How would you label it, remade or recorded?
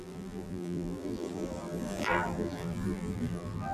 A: remade